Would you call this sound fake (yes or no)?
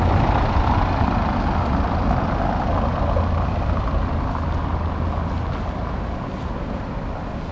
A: no